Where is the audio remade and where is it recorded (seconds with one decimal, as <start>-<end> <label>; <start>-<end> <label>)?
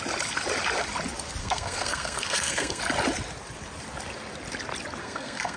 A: 0.0-1.4 recorded; 1.4-2.8 remade; 2.8-5.0 recorded; 5.0-5.6 remade